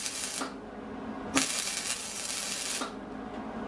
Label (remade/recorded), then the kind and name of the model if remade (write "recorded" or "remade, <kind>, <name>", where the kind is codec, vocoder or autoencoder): recorded